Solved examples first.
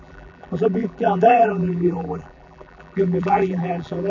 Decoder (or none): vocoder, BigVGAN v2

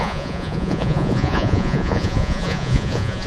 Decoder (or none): vocoder, Vocos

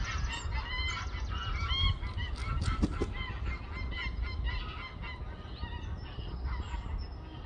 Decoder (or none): none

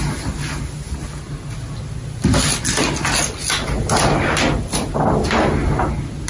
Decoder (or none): none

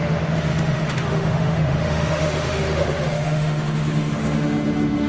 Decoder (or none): autoencoder, DAC-VAE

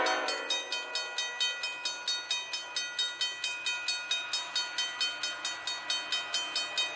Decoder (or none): none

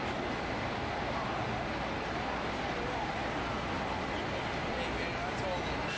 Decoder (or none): none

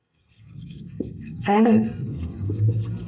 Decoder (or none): codec, SNAC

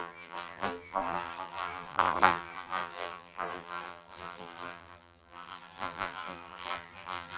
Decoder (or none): vocoder, BigVGAN v2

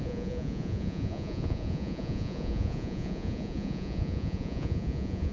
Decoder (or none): vocoder, Vocos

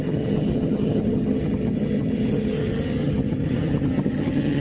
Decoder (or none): vocoder, HiFi-GAN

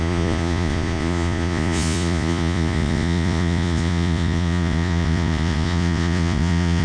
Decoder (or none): vocoder, Vocos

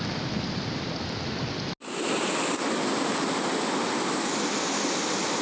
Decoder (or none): none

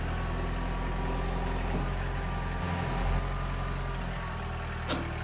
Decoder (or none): none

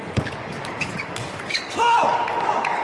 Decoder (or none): codec, DAC